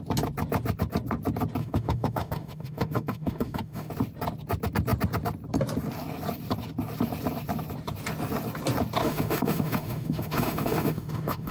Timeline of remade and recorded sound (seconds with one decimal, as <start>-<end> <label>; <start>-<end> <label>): 0.0-1.6 recorded; 1.6-3.9 remade; 3.9-9.0 recorded; 9.0-11.5 remade